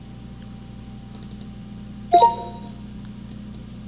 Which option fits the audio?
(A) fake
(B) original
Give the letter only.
B